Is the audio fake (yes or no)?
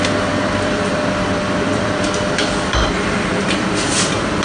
yes